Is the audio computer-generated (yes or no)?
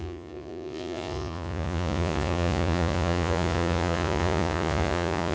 yes